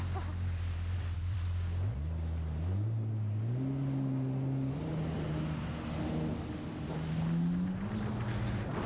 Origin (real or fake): real